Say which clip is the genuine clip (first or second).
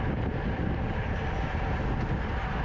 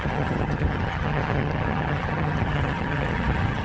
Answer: first